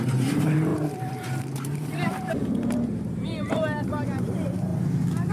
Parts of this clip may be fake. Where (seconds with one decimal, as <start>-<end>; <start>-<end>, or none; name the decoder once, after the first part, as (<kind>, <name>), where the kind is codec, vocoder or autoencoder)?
0.0-4.7 (vocoder, BigVGAN v2)